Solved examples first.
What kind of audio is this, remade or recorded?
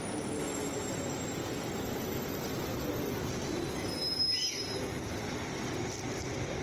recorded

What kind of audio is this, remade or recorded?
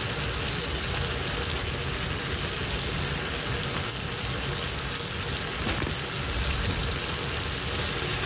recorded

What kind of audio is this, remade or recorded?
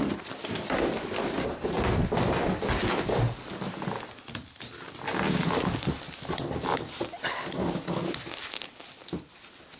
recorded